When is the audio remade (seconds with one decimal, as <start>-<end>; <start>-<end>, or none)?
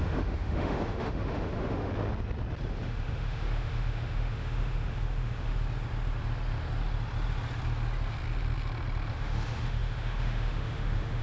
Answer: 0.0-1.9; 2.7-5.5; 9.1-11.2